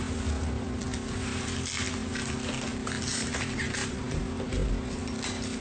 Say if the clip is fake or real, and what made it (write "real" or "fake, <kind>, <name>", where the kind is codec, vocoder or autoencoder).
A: real